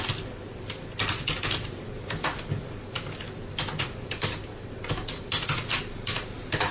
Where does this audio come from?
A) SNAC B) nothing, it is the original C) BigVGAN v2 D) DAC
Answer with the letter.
B